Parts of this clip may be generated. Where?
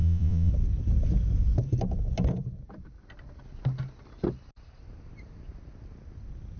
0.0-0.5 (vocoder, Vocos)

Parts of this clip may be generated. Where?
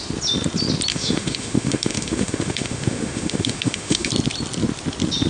0.9-4.1 (autoencoder, DAC-VAE)